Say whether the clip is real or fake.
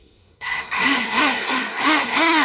fake